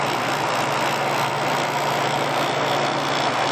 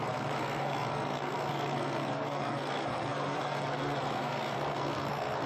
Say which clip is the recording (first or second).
first